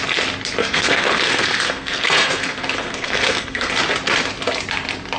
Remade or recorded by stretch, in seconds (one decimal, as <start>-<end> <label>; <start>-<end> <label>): 0.0-0.6 recorded; 0.6-3.7 remade; 3.7-5.2 recorded